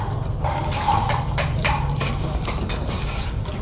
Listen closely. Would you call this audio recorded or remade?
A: remade